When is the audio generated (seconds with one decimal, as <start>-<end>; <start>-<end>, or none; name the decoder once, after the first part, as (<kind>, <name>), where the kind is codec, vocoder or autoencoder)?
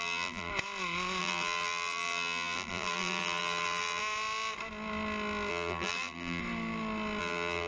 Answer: 0.0-0.5 (vocoder, BigVGAN v2); 1.2-4.0; 5.5-6.4; 7.2-7.7